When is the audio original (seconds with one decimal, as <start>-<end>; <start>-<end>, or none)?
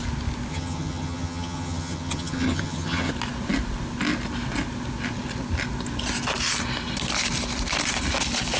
0.0-0.5; 3.1-8.6